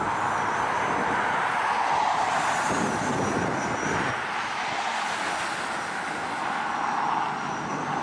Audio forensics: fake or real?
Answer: real